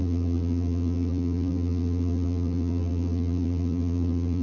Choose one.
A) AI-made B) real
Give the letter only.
A